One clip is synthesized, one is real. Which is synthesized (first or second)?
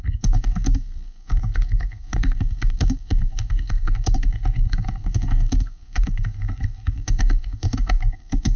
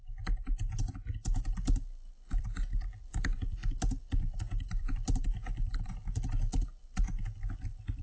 first